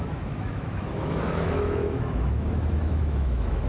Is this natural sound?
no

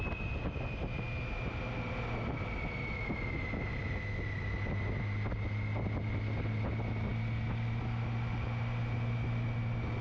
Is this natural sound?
yes